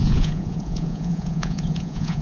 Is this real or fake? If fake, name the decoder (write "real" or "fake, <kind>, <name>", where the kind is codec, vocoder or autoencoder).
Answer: fake, vocoder, Vocos